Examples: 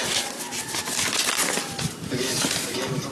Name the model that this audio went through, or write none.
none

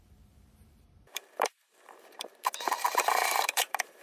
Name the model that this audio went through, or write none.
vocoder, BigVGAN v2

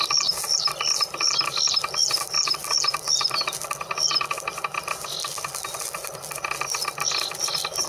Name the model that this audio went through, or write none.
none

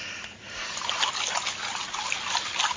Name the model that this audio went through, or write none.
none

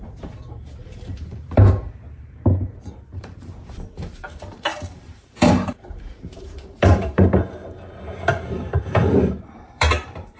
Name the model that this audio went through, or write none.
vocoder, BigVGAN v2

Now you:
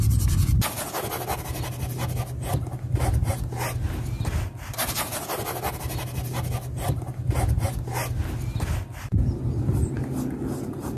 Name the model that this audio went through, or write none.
none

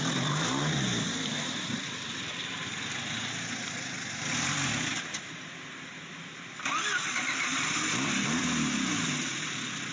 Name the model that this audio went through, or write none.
vocoder, BigVGAN v2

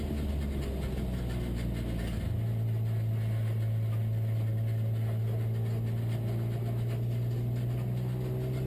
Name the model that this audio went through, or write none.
none